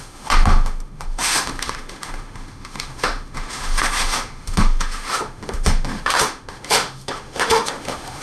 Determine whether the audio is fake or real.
fake